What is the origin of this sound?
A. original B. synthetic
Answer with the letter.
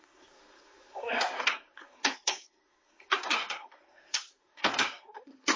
B